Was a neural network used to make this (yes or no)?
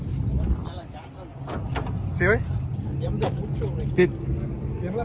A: no